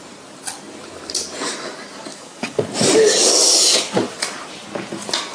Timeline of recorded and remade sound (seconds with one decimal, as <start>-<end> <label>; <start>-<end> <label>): 0.0-2.1 recorded; 2.1-2.6 remade; 2.6-5.3 recorded